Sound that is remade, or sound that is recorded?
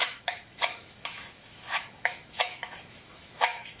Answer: remade